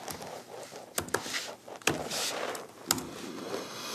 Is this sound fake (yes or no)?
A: no